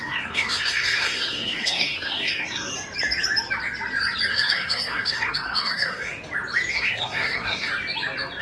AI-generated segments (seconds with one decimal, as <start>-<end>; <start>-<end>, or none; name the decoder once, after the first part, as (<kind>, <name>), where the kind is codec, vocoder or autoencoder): 0.0-2.7 (codec, SNAC); 4.3-6.1; 6.7-7.7